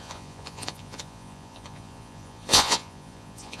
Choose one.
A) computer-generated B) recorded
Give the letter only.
A